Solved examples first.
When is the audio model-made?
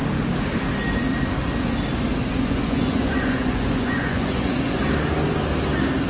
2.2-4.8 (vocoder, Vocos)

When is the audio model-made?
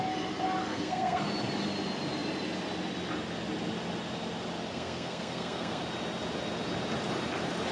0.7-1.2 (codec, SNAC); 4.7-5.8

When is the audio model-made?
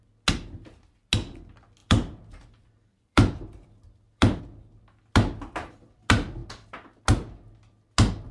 1.8-4.4 (vocoder, BigVGAN v2); 6.4-7.0